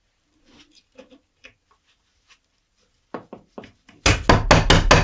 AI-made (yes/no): no